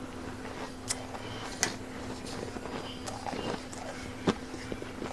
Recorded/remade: recorded